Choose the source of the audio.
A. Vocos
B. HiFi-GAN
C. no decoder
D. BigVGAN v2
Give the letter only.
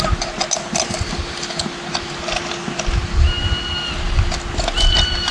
C